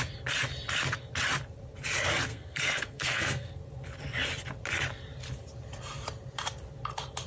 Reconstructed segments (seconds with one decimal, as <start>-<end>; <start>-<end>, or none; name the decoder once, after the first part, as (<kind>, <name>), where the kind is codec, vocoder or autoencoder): 2.3-3.6 (codec, SNAC)